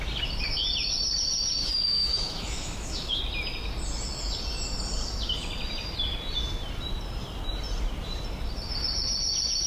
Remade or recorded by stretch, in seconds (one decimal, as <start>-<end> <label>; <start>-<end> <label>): 0.0-1.6 recorded; 1.6-3.2 remade; 3.2-9.7 recorded